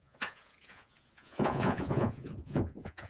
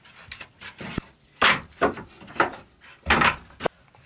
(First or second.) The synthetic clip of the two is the first